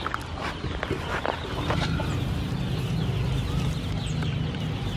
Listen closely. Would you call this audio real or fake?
real